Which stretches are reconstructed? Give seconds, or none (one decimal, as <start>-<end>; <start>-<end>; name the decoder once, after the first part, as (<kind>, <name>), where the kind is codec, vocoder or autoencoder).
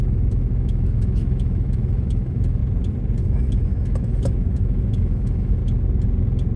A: 0.0-2.6 (autoencoder, DAC-VAE); 3.2-5.6